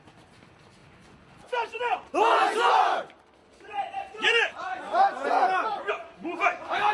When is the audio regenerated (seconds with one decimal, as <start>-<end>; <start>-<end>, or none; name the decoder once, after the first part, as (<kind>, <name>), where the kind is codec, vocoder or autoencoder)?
0.8-2.1 (vocoder, Vocos); 3.4-5.9